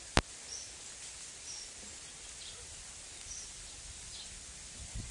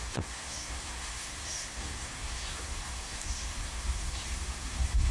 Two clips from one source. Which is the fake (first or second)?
second